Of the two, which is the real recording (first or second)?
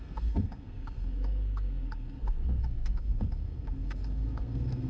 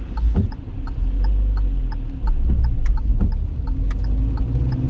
second